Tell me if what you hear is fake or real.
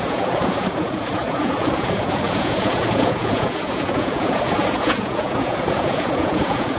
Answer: fake